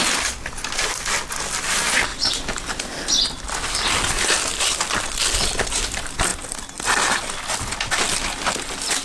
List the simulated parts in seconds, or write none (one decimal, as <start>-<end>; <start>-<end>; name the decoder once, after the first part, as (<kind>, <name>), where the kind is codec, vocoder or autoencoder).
2.1-4.1 (vocoder, BigVGAN v2); 6.3-7.2